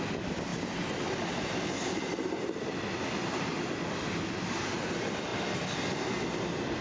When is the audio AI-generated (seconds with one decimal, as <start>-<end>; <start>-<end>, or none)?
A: none